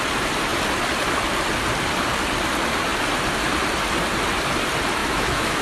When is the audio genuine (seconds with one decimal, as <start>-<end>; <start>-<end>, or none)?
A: 0.0-5.0

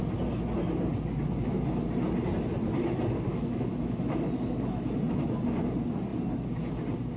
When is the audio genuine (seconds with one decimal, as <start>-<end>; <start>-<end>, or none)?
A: 0.0-3.3; 5.0-7.2

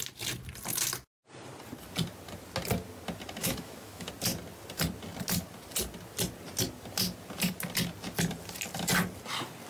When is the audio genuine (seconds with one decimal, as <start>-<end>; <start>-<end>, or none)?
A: 0.0-3.4; 4.1-9.7

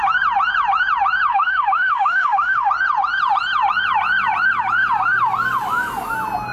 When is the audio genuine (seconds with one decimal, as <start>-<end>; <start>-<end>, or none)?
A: 0.0-1.3; 2.7-6.5

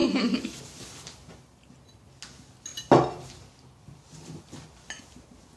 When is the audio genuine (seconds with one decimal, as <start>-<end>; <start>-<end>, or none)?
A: 0.6-5.6

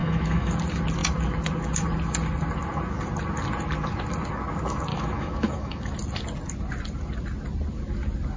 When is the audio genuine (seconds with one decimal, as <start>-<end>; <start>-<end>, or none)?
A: 0.5-4.9; 5.9-8.4

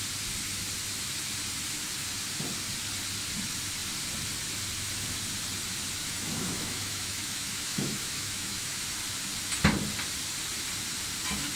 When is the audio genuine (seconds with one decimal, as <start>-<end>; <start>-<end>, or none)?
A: 0.0-6.0; 8.8-11.6

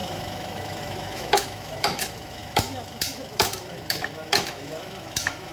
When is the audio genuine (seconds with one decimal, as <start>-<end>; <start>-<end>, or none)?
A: none